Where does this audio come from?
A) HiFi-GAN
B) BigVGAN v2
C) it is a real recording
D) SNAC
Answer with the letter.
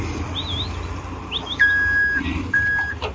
C